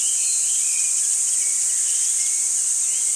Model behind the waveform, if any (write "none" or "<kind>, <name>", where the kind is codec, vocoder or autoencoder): none